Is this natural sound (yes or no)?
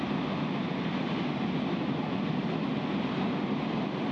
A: yes